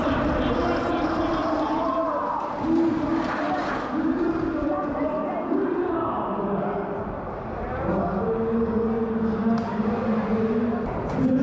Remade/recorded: recorded